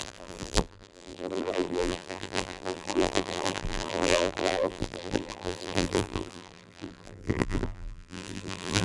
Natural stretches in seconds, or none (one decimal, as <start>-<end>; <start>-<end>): none